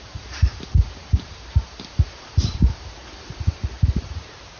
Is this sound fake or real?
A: fake